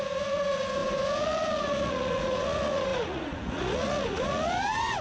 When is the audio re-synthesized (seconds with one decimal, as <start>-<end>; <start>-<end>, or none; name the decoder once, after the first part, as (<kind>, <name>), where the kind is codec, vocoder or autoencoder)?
0.0-5.0 (vocoder, Vocos)